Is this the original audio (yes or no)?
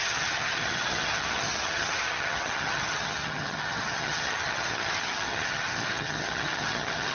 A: no